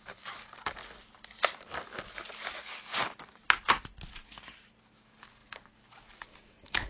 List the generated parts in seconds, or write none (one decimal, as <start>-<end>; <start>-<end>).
0.0-0.8; 4.8-6.9